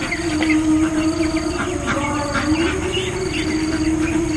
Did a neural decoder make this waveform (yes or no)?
no